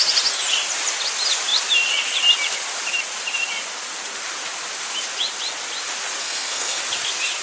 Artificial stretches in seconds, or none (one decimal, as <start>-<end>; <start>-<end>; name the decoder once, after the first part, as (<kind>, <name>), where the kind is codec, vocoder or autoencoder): 6.2-6.8 (codec, SNAC)